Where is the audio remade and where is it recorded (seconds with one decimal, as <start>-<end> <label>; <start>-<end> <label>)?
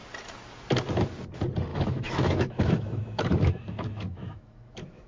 0.0-1.7 recorded; 1.7-5.1 remade